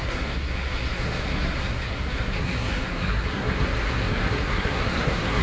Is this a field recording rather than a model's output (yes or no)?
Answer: no